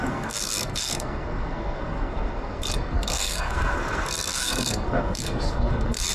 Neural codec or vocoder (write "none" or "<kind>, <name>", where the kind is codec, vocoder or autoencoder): codec, SNAC